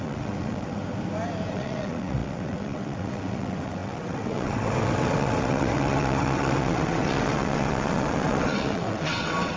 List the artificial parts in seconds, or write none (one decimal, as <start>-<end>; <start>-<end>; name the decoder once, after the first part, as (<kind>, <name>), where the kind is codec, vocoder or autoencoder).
0.0-0.8 (vocoder, WaveNeXt); 1.5-9.6